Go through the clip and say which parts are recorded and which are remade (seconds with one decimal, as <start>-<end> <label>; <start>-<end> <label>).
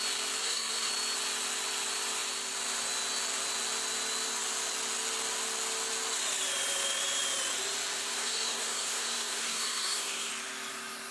0.0-0.4 recorded; 0.4-0.9 remade; 0.9-8.0 recorded; 8.0-10.3 remade; 10.3-11.1 recorded